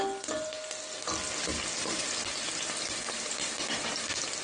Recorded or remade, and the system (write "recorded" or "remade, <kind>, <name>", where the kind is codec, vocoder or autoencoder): recorded